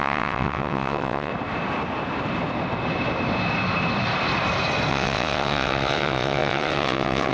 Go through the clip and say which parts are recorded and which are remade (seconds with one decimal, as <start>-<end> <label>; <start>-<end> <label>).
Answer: 0.0-1.3 remade; 1.3-4.9 recorded; 4.9-7.3 remade